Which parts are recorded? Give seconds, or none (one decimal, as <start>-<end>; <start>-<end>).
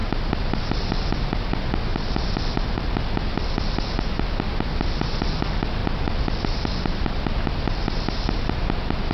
0.6-1.9; 2.9-5.8; 6.4-9.1